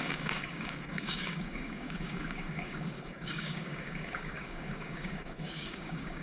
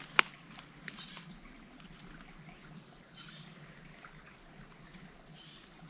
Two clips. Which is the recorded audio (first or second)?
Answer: second